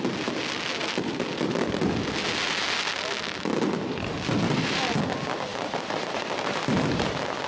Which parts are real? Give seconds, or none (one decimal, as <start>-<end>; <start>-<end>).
0.0-5.5; 7.1-7.5